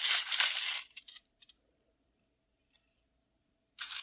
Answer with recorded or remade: remade